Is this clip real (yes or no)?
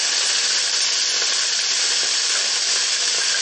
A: yes